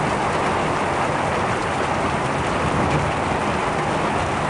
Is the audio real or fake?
real